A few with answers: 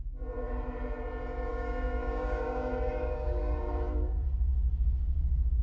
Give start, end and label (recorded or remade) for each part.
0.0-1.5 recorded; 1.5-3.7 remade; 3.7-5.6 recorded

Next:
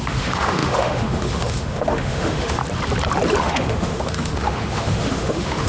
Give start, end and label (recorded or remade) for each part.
0.0-2.6 remade; 2.6-3.4 recorded; 3.4-5.7 remade

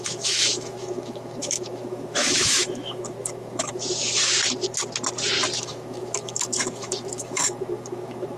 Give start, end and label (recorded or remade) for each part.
0.0-3.8 remade; 3.8-5.6 recorded; 5.6-8.4 remade

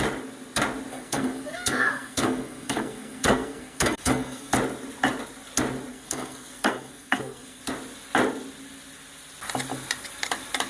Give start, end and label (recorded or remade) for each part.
0.0-0.9 recorded; 0.9-4.5 remade; 4.5-5.9 recorded; 5.9-7.6 remade; 7.6-10.7 recorded